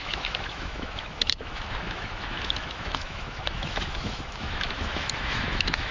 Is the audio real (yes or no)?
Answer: no